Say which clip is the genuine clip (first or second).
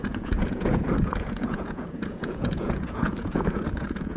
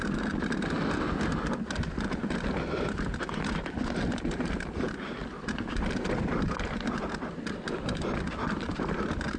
second